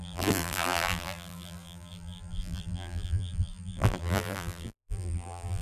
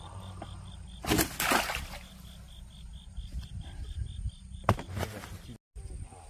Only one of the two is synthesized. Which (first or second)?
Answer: first